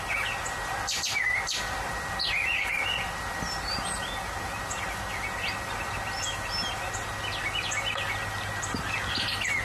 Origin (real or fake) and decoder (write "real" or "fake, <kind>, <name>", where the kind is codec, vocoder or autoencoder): real